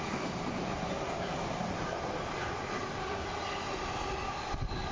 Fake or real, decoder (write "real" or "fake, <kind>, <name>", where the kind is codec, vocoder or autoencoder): real